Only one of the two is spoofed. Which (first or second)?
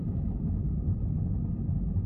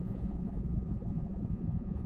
second